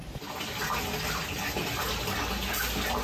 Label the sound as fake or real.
real